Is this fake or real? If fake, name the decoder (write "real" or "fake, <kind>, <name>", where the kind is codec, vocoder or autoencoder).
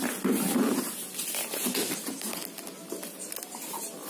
real